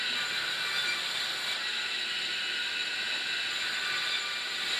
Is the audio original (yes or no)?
yes